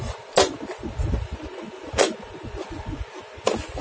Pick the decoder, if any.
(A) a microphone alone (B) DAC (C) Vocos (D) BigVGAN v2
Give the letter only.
A